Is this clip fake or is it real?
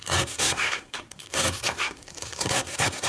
fake